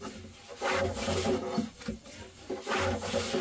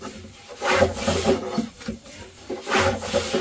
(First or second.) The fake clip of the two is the second